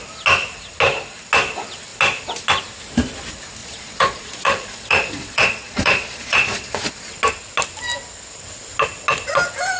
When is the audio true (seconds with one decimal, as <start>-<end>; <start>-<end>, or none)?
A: 0.0-3.6; 6.9-9.8

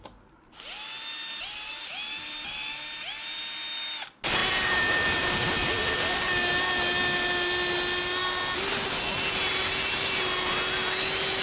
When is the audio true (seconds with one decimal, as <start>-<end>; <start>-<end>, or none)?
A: 0.0-11.4

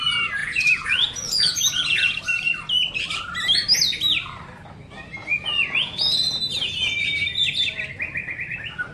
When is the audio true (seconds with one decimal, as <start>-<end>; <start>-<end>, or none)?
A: 0.0-0.4; 2.2-5.2; 6.4-8.9

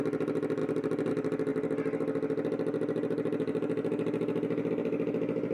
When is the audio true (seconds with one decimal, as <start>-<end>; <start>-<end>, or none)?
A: 0.0-5.5

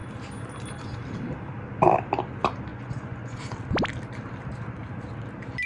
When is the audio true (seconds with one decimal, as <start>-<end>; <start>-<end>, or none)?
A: 0.0-2.7; 3.4-5.7

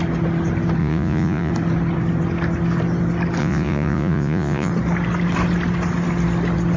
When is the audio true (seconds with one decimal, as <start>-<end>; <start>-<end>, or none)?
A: 0.0-0.8; 1.5-3.4; 4.7-6.8

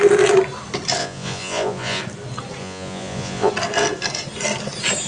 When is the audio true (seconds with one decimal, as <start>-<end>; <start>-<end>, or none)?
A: 0.0-1.0; 2.0-2.6; 3.5-5.1

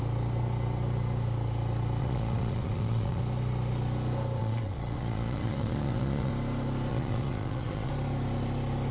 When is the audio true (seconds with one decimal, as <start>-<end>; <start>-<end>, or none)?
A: 0.0-2.0; 3.2-4.4; 6.3-6.9; 7.9-8.9